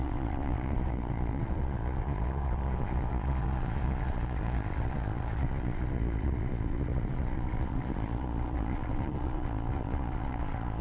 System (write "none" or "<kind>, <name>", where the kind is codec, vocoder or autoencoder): vocoder, Vocos